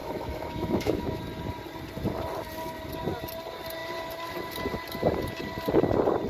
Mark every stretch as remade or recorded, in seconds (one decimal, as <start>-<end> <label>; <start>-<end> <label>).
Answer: 0.0-1.2 remade; 1.2-6.3 recorded